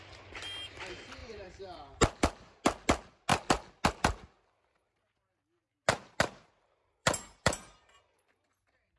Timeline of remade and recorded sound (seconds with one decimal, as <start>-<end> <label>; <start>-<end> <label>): 0.0-1.2 recorded; 1.2-2.6 remade; 2.6-7.0 recorded; 7.0-8.0 remade; 8.0-9.0 recorded